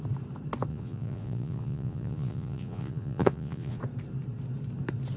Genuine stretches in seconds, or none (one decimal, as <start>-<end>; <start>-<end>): 0.0-0.7; 3.8-5.2